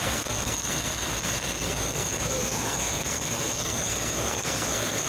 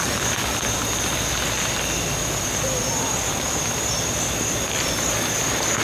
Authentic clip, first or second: second